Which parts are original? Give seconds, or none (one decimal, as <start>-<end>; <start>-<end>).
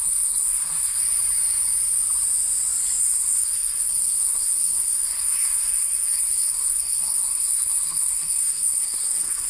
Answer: 1.0-3.0